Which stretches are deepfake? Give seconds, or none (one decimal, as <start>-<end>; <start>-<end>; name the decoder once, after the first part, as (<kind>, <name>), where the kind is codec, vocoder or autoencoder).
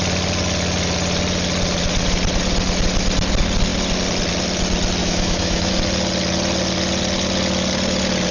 5.0-5.7 (autoencoder, DAC-VAE)